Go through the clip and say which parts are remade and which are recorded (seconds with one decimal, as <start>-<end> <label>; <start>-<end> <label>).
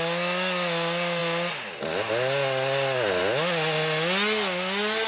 0.0-5.1 recorded